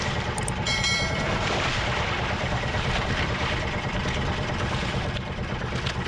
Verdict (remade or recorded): remade